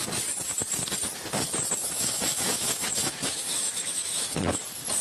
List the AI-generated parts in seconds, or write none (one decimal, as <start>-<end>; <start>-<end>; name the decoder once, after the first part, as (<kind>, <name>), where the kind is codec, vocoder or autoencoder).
1.8-4.6 (autoencoder, DAC-VAE)